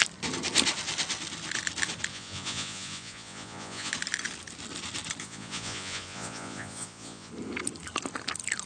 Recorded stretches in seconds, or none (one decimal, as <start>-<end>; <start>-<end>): 0.0-2.1; 3.9-5.2; 7.3-8.7